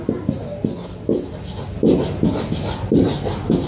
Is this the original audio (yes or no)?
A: yes